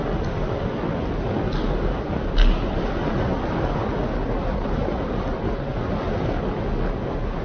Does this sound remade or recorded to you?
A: recorded